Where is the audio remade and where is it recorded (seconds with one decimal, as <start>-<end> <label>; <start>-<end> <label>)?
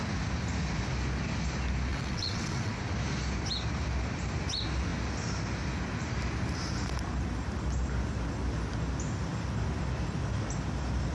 0.0-1.9 recorded; 1.9-2.7 remade; 2.7-11.1 recorded